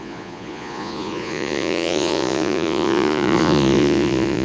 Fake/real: fake